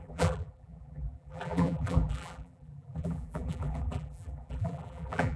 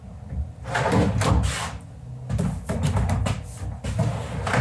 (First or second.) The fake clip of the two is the first